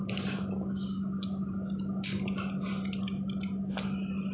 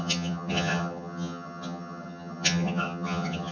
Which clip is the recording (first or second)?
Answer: first